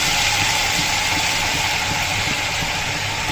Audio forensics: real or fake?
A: real